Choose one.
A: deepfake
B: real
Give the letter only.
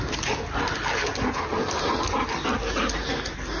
B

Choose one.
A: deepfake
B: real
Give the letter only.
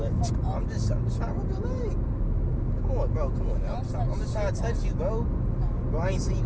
B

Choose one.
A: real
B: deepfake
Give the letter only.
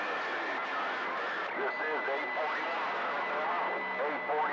A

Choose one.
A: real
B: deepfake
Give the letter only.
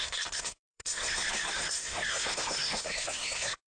B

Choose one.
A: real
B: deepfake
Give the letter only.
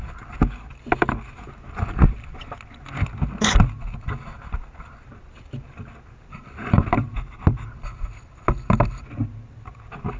A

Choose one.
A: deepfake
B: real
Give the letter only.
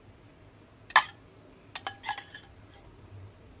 B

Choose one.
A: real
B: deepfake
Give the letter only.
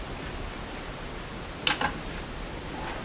A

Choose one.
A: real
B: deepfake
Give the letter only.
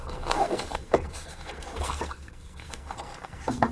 B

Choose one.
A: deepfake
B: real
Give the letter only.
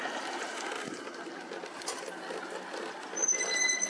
B